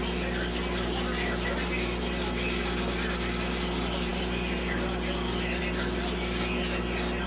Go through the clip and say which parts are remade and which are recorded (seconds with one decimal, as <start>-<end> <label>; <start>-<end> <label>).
0.0-7.3 recorded